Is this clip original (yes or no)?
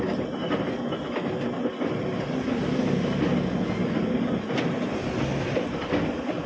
yes